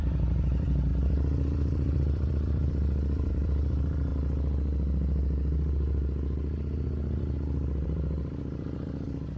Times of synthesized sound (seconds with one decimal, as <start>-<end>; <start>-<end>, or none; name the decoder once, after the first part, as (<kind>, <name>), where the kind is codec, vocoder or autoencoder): 0.0-4.1 (vocoder, BigVGAN v2); 7.2-9.4